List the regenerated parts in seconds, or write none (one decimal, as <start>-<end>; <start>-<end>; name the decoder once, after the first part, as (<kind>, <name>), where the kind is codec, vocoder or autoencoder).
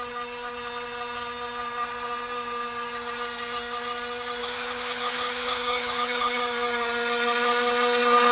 4.4-6.4 (codec, HILCodec)